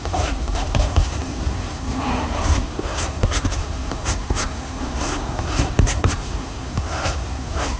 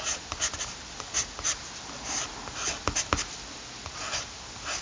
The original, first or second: second